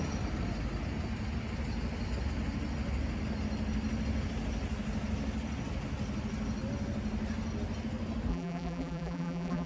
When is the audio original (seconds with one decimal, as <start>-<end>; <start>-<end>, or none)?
0.0-8.3